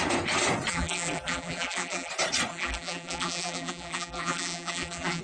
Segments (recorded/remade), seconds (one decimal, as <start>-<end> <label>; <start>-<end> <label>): 0.0-0.7 recorded; 0.7-2.1 remade; 2.1-2.5 recorded; 2.5-5.2 remade